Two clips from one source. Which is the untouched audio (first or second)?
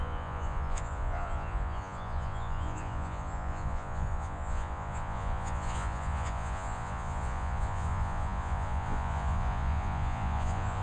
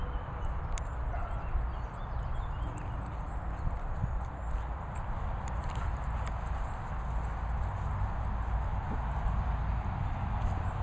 second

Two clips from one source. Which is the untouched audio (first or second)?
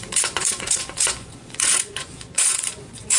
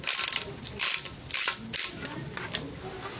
second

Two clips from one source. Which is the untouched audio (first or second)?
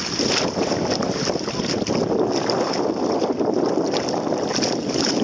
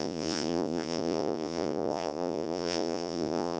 first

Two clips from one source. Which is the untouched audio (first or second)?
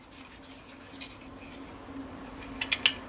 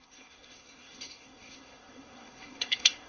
first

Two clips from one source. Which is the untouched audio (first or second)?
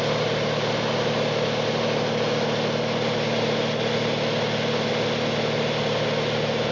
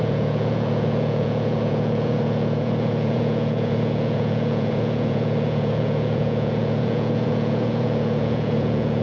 first